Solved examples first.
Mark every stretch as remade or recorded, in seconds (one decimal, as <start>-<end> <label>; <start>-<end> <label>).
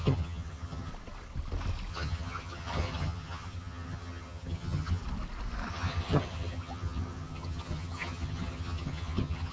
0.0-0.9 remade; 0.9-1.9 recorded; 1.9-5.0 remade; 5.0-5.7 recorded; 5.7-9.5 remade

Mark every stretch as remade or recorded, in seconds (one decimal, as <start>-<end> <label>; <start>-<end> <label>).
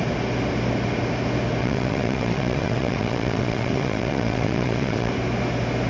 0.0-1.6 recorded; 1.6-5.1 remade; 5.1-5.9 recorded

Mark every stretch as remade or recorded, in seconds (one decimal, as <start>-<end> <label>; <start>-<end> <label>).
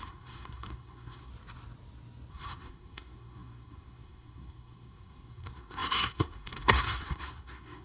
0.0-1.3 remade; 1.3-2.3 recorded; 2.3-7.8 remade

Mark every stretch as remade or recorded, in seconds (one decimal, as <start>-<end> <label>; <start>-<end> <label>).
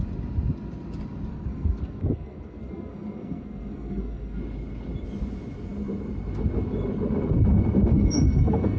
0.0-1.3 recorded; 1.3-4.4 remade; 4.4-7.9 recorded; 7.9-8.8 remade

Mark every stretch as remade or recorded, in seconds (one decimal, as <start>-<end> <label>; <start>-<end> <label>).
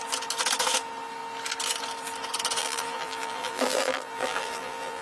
0.0-2.6 recorded; 2.6-5.0 remade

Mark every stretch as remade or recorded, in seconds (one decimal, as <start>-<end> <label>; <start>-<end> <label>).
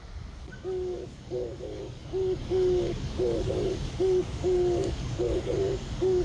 0.0-6.2 remade